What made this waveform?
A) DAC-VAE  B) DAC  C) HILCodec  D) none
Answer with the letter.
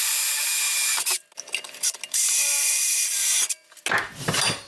D